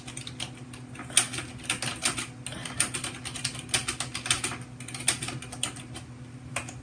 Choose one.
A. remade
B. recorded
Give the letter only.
B